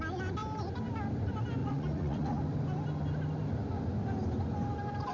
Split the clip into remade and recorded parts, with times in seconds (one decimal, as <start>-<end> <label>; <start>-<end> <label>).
0.0-1.6 recorded; 1.6-2.4 remade; 2.4-5.1 recorded